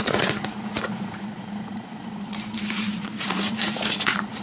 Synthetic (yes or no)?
yes